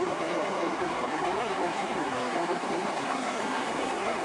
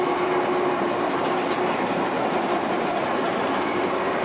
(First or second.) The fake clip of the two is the first